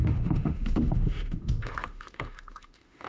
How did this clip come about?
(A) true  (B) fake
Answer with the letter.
B